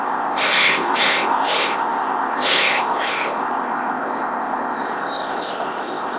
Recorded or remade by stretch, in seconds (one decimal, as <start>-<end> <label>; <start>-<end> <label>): 0.0-6.2 remade